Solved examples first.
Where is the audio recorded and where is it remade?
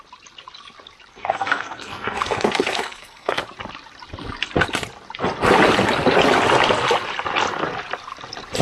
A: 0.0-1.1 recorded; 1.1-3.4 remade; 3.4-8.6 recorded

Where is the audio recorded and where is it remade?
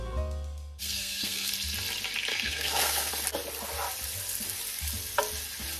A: 0.0-0.8 recorded; 0.8-1.5 remade; 1.5-2.3 recorded; 2.3-3.1 remade; 3.1-5.8 recorded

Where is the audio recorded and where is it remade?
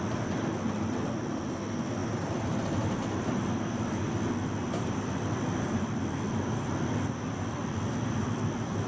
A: 0.0-8.9 recorded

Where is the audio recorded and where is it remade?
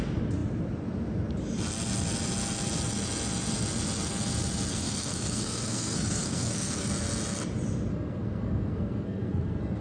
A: 0.0-4.7 recorded; 4.7-6.9 remade; 6.9-7.9 recorded; 7.9-9.8 remade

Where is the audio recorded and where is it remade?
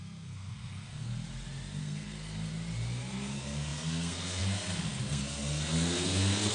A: 0.0-1.1 remade; 1.1-1.8 recorded; 1.8-2.5 remade; 2.5-3.1 recorded; 3.1-6.5 remade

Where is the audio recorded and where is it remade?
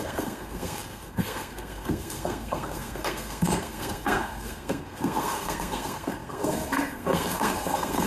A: 0.0-8.1 remade